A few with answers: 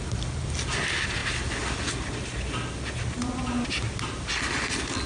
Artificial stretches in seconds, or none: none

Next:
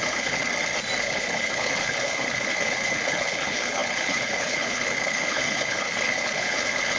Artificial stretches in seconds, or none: 0.0-0.4 (codec, HILCodec); 1.0-7.0

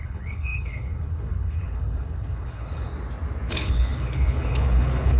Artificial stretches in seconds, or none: 0.0-2.9 (codec, HILCodec); 3.5-5.2

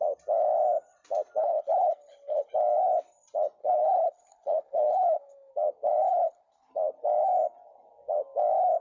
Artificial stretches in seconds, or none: 1.4-2.5 (codec, HILCodec); 3.6-5.5; 6.1-6.7

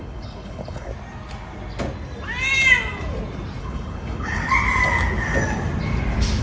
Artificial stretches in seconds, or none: 0.0-0.9 (codec, HILCodec); 3.6-4.4